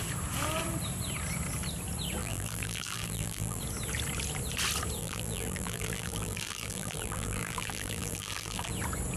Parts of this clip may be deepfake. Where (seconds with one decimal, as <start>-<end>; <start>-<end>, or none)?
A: 2.2-3.6; 5.0-8.7